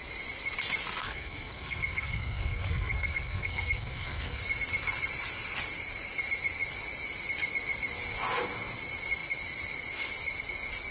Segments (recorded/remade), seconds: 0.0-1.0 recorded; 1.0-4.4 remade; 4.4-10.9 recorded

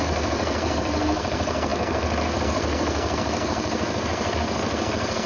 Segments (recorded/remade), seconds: 0.0-5.3 remade

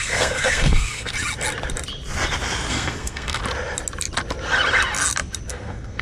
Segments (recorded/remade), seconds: 0.0-1.1 remade; 1.1-2.7 recorded; 2.7-3.4 remade; 3.4-5.5 recorded; 5.5-6.0 remade

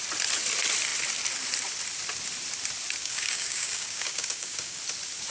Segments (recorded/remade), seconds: 0.0-3.0 recorded; 3.0-4.8 remade; 4.8-5.3 recorded

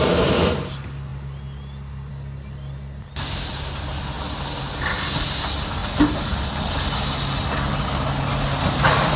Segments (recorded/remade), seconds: 0.0-9.2 recorded